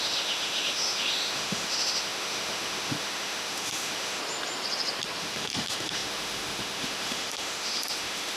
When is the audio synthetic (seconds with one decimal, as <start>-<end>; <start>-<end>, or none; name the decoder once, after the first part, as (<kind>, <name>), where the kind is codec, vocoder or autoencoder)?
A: 0.0-4.2 (autoencoder, DAC-VAE); 5.2-8.4